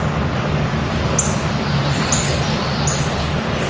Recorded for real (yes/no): yes